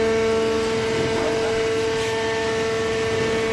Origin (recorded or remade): recorded